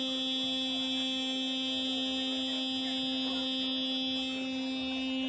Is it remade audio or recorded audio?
recorded